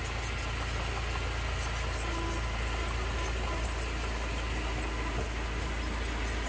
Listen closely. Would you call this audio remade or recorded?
recorded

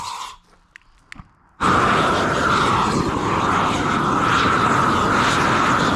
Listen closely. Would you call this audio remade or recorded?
recorded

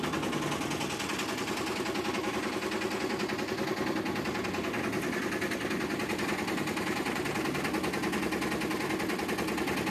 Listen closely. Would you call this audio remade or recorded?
recorded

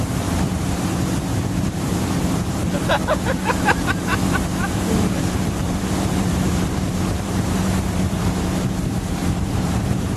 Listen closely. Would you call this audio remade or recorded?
remade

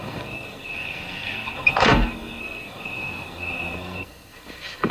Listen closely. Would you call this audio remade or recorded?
remade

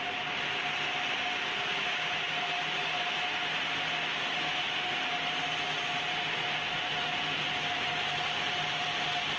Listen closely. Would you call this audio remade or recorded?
recorded